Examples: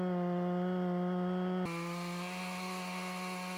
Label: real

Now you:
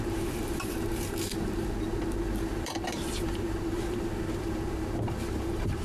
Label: fake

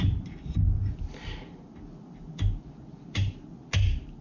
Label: real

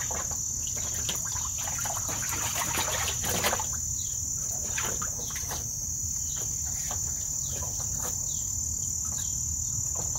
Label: real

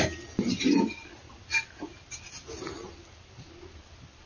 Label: real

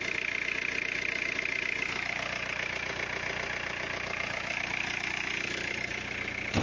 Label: real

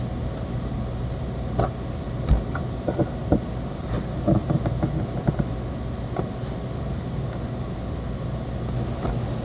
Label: real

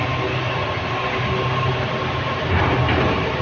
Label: real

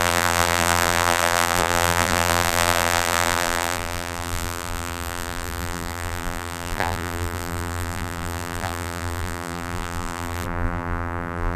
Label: fake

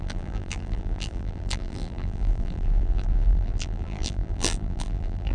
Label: fake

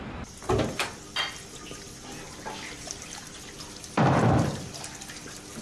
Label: real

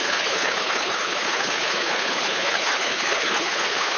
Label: fake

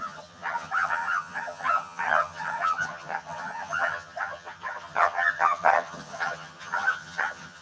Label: fake